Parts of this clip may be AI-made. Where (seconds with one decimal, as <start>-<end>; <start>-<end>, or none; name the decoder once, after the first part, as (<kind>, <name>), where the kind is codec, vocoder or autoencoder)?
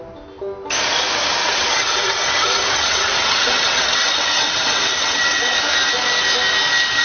1.4-5.6 (vocoder, WaveNeXt)